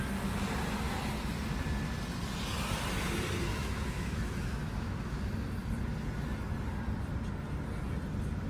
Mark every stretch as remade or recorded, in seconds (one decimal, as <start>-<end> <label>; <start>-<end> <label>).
0.0-3.5 recorded; 3.5-5.2 remade; 5.2-8.5 recorded